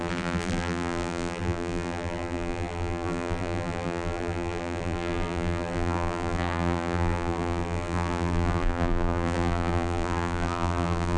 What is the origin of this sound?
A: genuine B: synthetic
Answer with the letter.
B